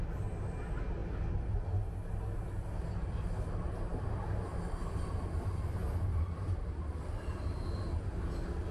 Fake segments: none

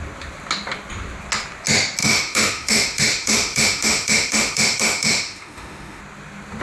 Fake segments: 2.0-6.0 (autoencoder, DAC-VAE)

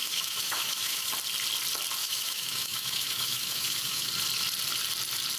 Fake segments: 0.0-1.1 (autoencoder, DAC-VAE); 2.0-4.1